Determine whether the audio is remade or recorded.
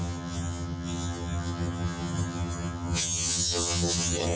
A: remade